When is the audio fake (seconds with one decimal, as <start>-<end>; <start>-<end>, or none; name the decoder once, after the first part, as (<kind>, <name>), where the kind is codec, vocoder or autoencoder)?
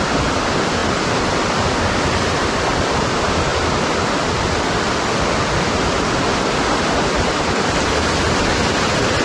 none